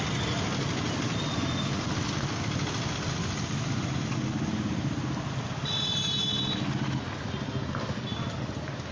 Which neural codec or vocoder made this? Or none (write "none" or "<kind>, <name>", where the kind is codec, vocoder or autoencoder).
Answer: none